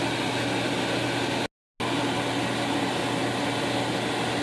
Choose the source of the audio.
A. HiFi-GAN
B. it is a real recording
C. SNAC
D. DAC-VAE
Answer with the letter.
B